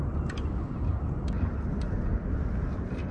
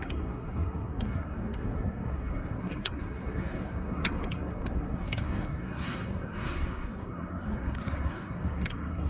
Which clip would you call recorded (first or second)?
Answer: first